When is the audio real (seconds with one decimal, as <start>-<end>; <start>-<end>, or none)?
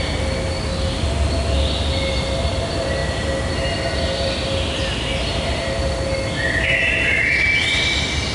0.0-8.3